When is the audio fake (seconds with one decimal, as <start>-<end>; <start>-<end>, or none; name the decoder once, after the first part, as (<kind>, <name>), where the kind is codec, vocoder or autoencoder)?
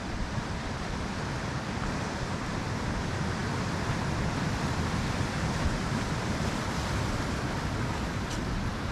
0.0-7.7 (vocoder, BigVGAN v2); 8.4-8.9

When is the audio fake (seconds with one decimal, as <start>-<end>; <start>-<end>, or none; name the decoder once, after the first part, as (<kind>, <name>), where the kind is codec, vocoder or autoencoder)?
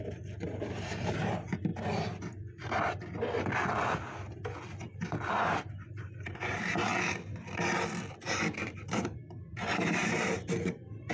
0.0-1.7 (vocoder, BigVGAN v2); 5.3-6.9; 8.6-11.1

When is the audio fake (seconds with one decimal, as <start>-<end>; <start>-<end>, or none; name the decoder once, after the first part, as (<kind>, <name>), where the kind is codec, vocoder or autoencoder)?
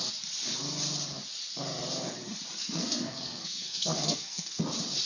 2.6-4.6 (codec, SNAC)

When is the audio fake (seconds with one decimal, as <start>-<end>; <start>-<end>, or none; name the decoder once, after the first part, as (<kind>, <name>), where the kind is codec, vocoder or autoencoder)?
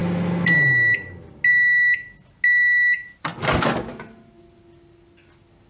none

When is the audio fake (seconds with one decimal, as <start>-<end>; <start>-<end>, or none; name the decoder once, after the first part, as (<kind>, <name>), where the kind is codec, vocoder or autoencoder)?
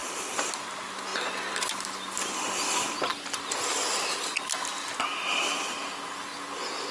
none